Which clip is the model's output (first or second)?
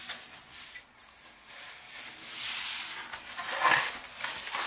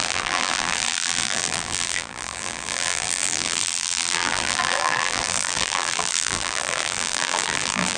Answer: second